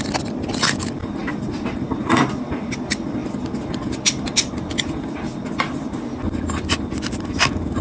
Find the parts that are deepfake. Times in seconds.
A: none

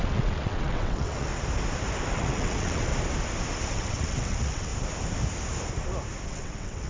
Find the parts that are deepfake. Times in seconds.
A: 0.0-1.3 (vocoder, WaveNeXt); 2.1-2.9; 3.7-4.7; 6.3-6.9